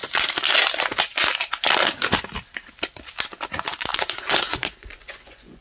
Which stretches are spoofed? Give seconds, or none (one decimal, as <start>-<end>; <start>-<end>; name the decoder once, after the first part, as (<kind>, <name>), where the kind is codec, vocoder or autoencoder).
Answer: 3.9-5.6 (vocoder, Vocos)